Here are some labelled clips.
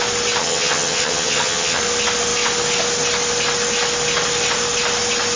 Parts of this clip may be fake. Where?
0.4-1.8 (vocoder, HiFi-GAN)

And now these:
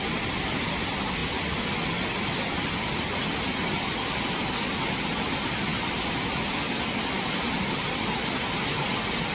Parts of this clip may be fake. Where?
none